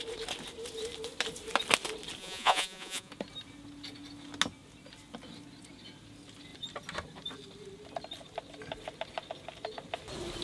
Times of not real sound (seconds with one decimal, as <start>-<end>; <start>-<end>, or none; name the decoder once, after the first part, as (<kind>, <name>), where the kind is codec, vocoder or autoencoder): 2.2-3.1 (vocoder, Vocos)